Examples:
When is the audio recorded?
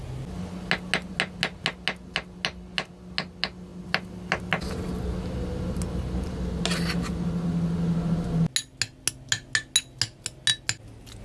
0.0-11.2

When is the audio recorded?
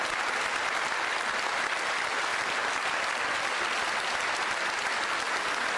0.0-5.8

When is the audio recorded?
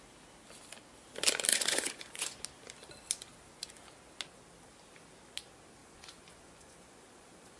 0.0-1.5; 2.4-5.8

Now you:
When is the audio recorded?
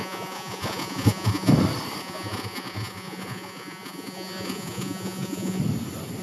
1.5-2.0; 5.6-6.2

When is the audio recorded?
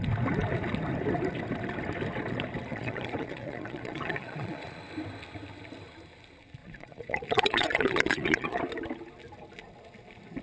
0.0-2.7; 4.8-6.6; 8.6-10.4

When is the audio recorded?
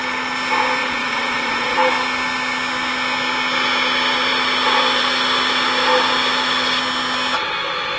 0.0-0.8; 1.9-8.0